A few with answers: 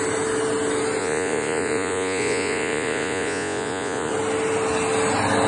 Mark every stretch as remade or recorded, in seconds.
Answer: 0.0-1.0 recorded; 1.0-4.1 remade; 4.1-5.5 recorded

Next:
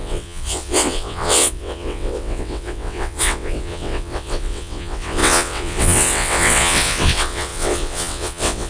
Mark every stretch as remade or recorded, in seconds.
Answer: 0.0-8.7 remade

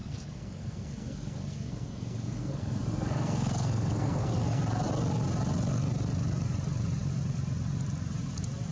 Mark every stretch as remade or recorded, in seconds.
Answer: 0.0-4.6 remade; 4.6-8.7 recorded

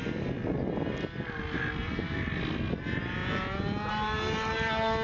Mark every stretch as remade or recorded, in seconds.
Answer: 0.0-3.2 recorded; 3.2-3.9 remade; 3.9-5.0 recorded

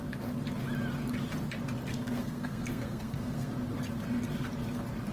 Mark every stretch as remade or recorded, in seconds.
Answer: 0.0-1.9 recorded; 1.9-3.5 remade; 3.5-5.1 recorded

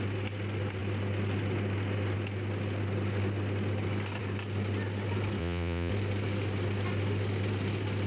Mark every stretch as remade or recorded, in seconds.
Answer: 0.0-5.4 recorded; 5.4-5.9 remade; 5.9-8.1 recorded

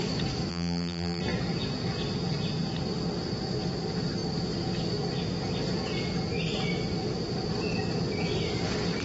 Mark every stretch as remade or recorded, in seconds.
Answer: 0.0-0.5 recorded; 0.5-1.2 remade; 1.2-9.0 recorded